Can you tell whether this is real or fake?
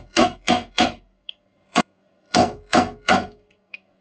fake